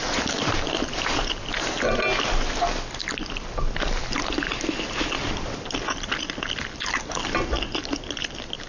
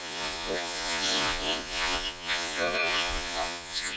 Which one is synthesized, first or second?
second